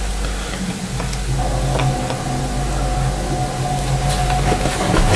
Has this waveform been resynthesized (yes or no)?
no